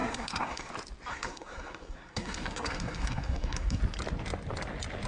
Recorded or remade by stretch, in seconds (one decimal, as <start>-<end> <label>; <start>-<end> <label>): 0.0-0.7 remade; 0.7-1.1 recorded; 1.1-3.8 remade; 3.8-5.1 recorded